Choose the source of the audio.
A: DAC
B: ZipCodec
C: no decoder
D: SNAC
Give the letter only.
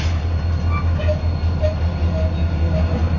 C